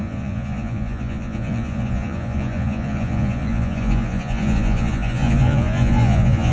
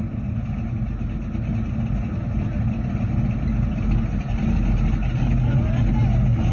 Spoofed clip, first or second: first